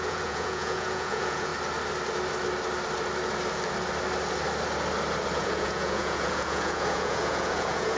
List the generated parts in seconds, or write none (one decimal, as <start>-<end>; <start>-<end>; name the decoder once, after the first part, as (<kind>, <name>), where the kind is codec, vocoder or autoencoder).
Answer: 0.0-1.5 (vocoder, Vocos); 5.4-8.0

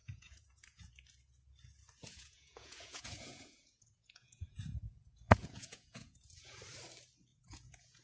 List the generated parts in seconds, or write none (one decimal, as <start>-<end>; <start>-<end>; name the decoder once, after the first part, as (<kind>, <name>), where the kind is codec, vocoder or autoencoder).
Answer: 0.0-0.9 (vocoder, Vocos); 2.0-6.6; 7.3-8.0

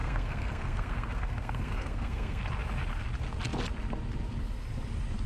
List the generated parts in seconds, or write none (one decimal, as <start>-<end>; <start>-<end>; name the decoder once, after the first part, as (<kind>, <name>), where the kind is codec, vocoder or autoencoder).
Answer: 0.0-2.4 (codec, SNAC)

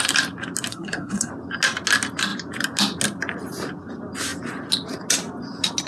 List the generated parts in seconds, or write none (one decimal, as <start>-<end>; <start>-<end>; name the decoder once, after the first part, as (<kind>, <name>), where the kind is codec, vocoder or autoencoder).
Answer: 0.7-1.3 (codec, SNAC)